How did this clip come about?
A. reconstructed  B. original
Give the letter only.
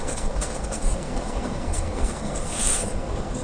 A